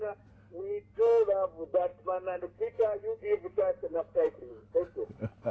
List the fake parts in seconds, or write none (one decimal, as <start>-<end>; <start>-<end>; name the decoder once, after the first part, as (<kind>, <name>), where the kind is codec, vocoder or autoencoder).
1.9-2.4 (autoencoder, DAC-VAE); 3.8-4.5